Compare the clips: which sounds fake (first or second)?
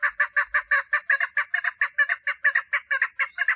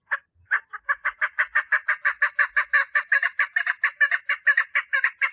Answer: second